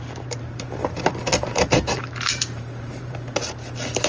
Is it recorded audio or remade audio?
remade